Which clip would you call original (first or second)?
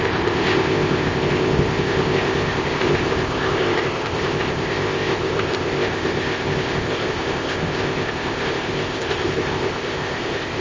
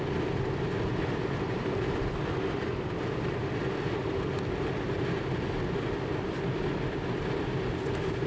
second